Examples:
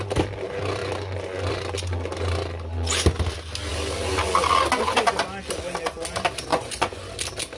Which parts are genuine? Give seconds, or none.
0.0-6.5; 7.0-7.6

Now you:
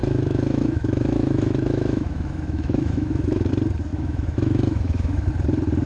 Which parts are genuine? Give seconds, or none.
3.5-3.9; 5.3-5.9

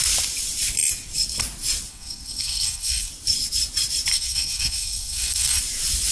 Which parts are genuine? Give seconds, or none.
0.0-1.9; 3.1-4.1; 5.6-6.1

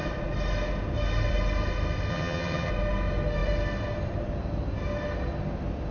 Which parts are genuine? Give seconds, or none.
0.0-2.1; 2.7-5.9

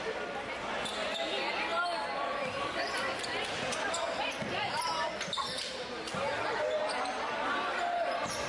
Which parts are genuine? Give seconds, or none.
0.0-8.5

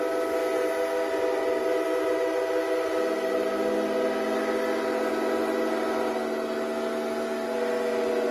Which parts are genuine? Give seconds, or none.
0.0-8.3